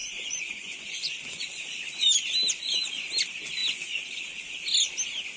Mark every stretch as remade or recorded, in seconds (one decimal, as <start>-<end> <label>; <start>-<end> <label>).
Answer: 0.0-1.6 remade; 1.6-5.4 recorded